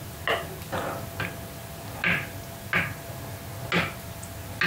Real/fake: real